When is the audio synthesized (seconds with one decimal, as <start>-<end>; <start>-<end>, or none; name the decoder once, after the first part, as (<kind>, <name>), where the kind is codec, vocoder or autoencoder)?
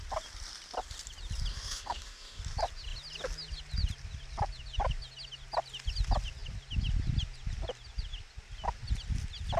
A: 1.5-2.4 (autoencoder, DAC-VAE)